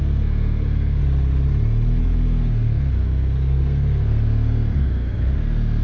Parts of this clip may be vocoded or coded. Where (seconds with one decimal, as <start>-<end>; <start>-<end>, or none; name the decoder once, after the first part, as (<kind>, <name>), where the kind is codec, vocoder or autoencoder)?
0.0-1.0 (codec, SNAC); 2.0-5.8